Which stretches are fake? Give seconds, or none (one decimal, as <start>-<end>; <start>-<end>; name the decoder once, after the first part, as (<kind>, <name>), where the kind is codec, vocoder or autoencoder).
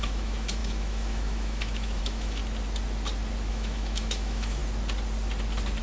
0.0-2.4 (autoencoder, DAC-VAE); 3.5-4.6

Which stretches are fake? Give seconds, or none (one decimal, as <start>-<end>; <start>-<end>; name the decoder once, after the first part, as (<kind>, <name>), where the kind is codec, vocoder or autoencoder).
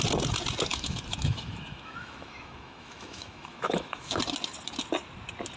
0.7-4.1 (autoencoder, DAC-VAE)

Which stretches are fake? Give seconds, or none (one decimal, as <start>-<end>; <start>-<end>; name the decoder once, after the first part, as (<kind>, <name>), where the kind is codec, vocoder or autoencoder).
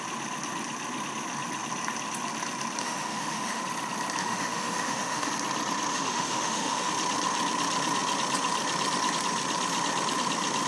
2.8-3.6 (autoencoder, DAC-VAE); 4.2-5.3; 5.9-6.9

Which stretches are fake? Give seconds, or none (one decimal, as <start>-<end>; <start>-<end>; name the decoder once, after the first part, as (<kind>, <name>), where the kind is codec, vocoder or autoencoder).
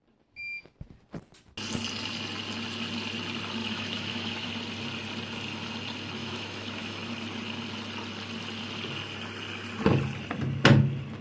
3.6-4.5 (autoencoder, DAC-VAE); 6.2-7.1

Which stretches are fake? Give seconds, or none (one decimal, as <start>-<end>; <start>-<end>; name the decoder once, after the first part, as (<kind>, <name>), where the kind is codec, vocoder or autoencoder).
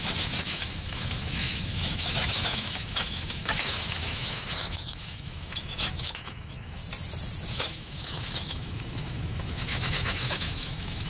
0.0-6.8 (autoencoder, DAC-VAE); 7.5-11.1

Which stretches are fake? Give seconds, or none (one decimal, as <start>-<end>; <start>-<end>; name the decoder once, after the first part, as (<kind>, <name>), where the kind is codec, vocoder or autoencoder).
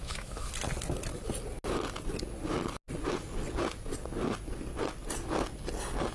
0.0-0.5 (autoencoder, DAC-VAE)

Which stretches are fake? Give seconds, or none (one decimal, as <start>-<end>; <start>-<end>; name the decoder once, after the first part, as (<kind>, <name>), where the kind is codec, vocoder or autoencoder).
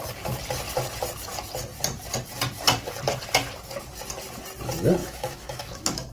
5.0-6.1 (autoencoder, DAC-VAE)